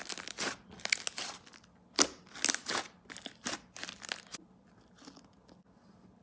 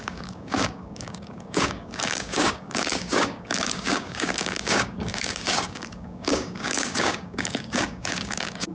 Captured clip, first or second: first